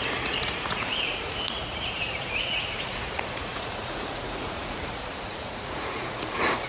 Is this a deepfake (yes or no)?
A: yes